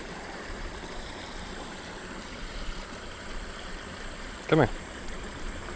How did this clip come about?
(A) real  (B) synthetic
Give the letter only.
B